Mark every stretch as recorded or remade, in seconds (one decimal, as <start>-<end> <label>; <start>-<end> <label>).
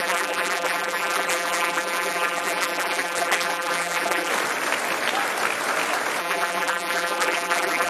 0.0-4.3 remade; 4.3-6.2 recorded; 6.2-7.9 remade